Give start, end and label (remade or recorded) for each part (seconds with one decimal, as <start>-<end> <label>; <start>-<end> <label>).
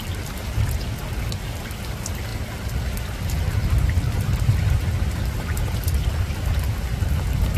0.0-7.6 recorded